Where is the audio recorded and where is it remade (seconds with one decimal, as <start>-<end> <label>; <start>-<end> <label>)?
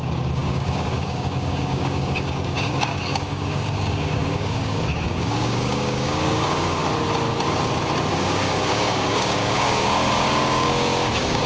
0.0-6.8 remade; 6.8-8.1 recorded; 8.1-11.5 remade